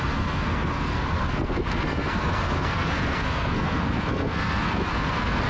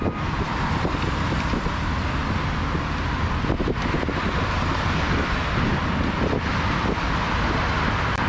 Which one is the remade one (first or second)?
first